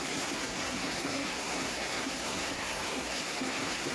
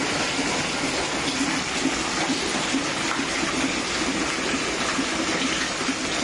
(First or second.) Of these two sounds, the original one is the second